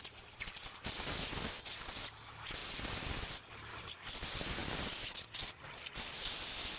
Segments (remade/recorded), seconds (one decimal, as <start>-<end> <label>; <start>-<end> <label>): 0.0-6.8 recorded